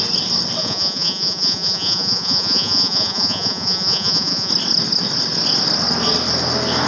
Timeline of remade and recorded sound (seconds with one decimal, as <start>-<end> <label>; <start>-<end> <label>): 0.0-0.6 recorded; 0.6-4.5 remade; 4.5-6.9 recorded